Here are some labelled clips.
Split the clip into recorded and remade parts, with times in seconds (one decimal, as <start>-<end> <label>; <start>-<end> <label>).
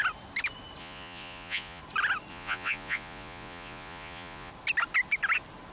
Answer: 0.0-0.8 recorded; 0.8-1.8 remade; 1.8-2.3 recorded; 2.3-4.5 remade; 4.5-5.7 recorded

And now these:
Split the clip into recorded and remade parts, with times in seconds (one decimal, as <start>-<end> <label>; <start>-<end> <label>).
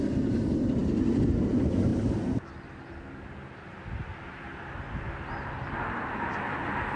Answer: 0.0-7.0 recorded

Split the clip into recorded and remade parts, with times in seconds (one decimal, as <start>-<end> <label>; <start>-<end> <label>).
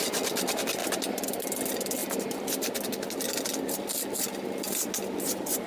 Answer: 0.0-5.7 recorded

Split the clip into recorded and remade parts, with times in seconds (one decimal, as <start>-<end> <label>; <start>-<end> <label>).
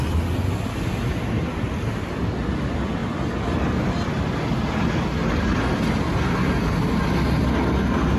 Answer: 0.0-8.2 recorded